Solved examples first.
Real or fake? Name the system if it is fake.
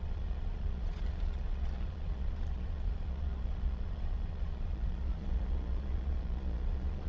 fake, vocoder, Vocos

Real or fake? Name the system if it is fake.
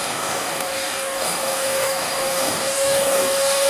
fake, codec, DAC